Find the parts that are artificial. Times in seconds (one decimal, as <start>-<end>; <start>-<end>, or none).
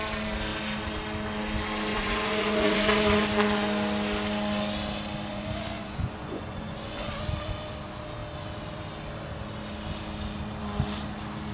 1.9-3.3; 5.3-7.1